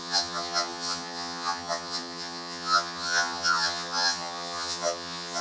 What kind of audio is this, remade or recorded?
remade